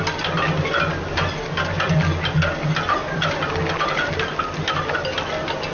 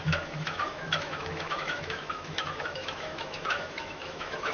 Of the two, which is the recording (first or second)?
first